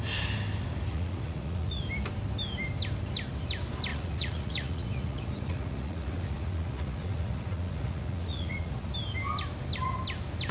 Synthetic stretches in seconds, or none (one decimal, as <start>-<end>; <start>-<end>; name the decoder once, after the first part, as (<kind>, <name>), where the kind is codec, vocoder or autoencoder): 0.9-1.8 (vocoder, Vocos); 3.9-8.9